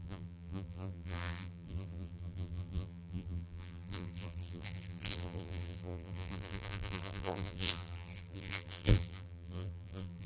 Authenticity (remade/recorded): remade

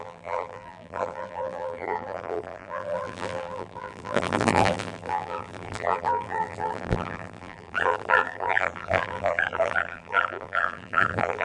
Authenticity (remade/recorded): remade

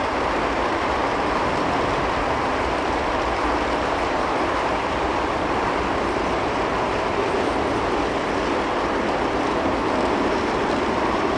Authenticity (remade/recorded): remade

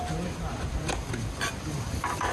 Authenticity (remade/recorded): remade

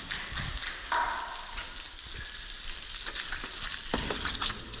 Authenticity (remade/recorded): recorded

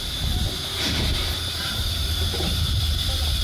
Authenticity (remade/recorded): remade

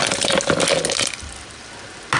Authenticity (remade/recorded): recorded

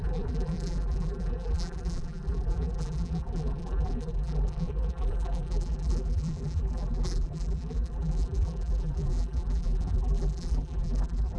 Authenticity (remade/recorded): remade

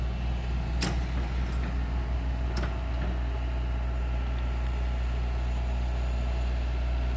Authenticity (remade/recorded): recorded